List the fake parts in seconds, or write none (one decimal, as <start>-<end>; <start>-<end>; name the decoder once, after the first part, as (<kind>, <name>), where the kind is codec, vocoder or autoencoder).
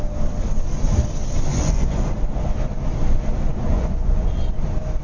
1.5-2.1 (vocoder, Vocos); 3.7-4.4